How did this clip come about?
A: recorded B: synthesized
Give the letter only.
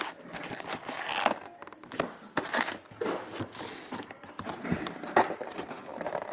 A